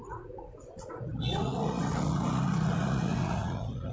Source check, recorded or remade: remade